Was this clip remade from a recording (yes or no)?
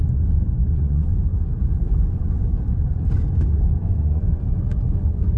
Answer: yes